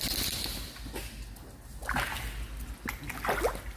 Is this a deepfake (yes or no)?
no